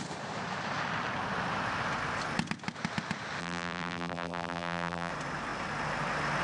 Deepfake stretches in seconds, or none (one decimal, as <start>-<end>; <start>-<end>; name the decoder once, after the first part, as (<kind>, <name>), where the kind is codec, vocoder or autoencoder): 3.4-5.1 (vocoder, BigVGAN v2)